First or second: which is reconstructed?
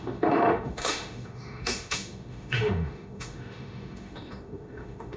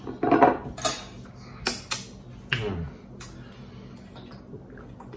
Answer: first